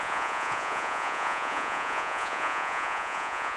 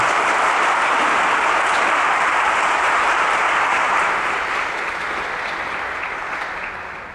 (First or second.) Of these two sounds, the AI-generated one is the first